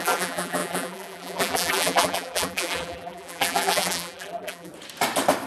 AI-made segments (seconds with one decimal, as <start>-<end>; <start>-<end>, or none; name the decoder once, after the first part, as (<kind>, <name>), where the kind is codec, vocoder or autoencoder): 0.0-4.7 (vocoder, BigVGAN v2)